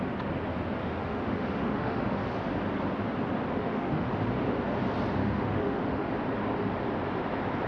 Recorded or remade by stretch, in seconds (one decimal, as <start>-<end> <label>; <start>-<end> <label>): 0.0-0.8 recorded; 0.8-2.2 remade; 2.2-3.6 recorded; 3.6-4.1 remade; 4.1-5.2 recorded; 5.2-6.1 remade; 6.1-7.7 recorded